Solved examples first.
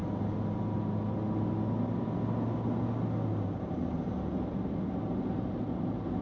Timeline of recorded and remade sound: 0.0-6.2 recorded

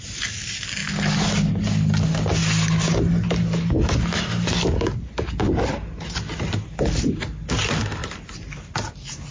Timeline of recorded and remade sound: 0.0-8.0 recorded; 8.0-8.7 remade; 8.7-9.3 recorded

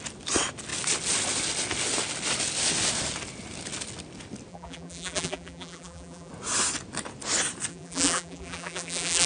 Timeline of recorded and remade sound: 0.0-4.5 recorded; 4.5-6.3 remade; 6.3-7.7 recorded; 7.7-9.3 remade

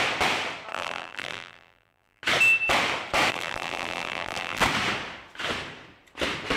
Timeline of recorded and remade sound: 0.0-0.7 recorded; 0.7-2.2 remade; 2.2-3.3 recorded; 3.3-4.6 remade; 4.6-6.6 recorded

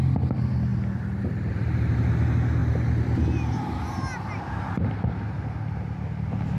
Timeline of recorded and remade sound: 0.0-6.6 recorded

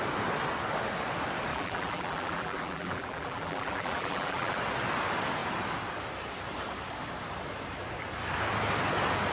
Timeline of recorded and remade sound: 0.0-1.5 recorded; 1.5-4.6 remade; 4.6-9.3 recorded

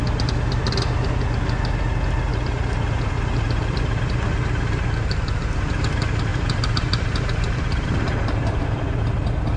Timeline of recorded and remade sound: 0.0-2.3 recorded; 2.3-4.0 remade; 4.0-6.3 recorded; 6.3-8.8 remade; 8.8-9.6 recorded